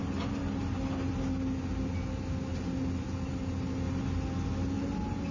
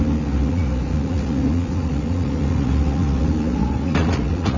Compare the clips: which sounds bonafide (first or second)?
first